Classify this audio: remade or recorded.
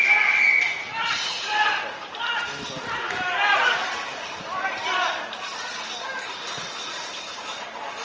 recorded